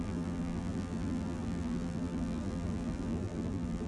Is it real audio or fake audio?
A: fake